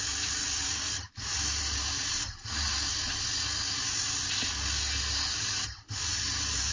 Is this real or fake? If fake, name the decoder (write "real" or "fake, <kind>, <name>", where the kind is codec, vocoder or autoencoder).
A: real